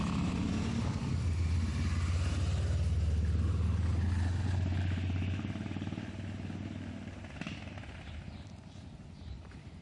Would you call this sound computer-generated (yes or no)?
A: no